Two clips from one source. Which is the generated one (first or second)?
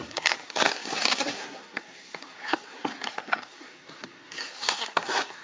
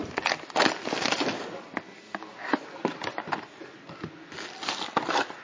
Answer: first